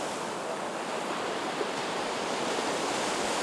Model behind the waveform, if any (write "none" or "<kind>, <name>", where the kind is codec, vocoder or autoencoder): none